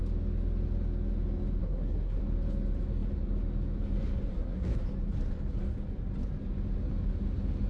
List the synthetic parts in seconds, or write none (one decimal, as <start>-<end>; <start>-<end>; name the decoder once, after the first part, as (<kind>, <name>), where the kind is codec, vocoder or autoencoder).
1.6-2.2 (codec, SNAC); 4.3-4.8